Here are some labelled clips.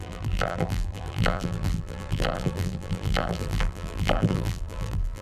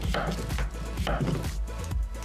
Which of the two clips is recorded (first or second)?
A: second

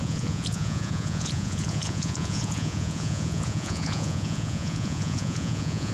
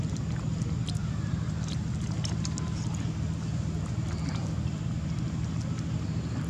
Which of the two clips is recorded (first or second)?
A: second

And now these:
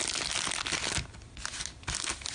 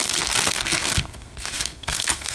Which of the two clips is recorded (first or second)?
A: first